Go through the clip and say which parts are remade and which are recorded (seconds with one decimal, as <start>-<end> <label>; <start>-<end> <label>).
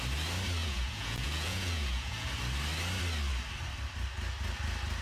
0.0-0.6 recorded; 0.6-2.3 remade; 2.3-5.0 recorded